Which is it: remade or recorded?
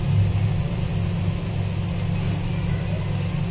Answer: recorded